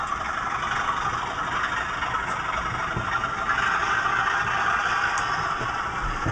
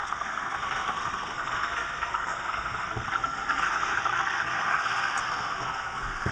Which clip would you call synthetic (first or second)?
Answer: second